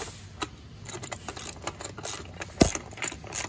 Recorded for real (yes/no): yes